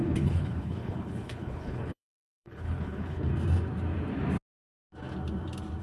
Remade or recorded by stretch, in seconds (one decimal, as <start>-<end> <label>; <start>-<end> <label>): 0.0-3.3 remade; 3.3-5.8 recorded